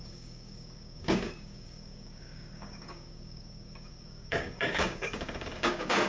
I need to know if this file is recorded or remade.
remade